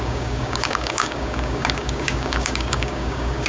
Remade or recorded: remade